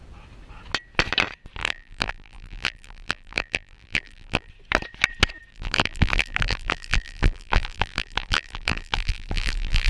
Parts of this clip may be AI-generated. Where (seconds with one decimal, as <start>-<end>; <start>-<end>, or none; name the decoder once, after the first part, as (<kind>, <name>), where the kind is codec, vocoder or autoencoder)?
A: 1.6-4.5 (vocoder, BigVGAN v2); 5.5-9.9